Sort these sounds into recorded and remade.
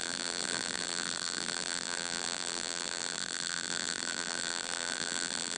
remade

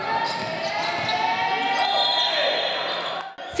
recorded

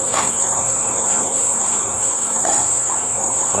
remade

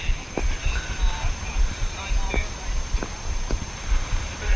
recorded